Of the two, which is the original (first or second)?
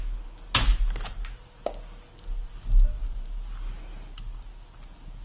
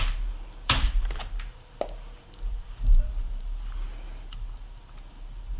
first